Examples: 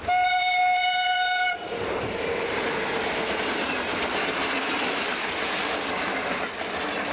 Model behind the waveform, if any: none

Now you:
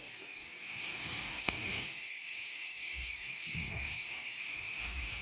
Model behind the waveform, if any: codec, DAC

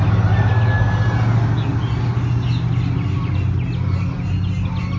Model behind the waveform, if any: none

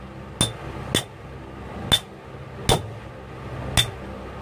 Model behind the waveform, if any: none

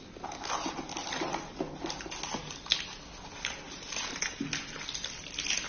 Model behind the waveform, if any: none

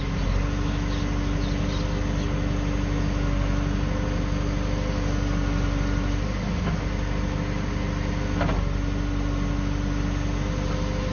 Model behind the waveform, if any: none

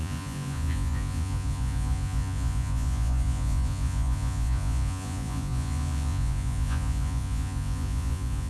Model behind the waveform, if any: vocoder, Vocos